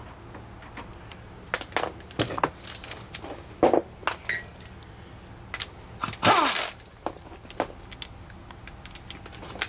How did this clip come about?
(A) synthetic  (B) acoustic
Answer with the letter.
B